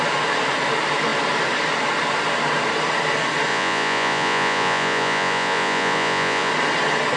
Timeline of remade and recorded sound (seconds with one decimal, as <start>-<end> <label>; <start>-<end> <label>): 0.0-3.5 recorded; 3.5-6.5 remade; 6.5-7.2 recorded